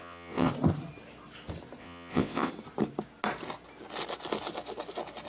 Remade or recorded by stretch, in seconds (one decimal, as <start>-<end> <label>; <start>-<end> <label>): 0.0-0.5 remade; 0.5-1.8 recorded; 1.8-2.5 remade; 2.5-5.3 recorded